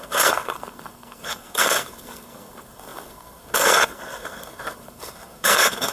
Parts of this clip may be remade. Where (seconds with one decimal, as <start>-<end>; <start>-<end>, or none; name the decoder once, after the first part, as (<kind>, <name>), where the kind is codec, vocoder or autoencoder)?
0.0-5.9 (codec, SNAC)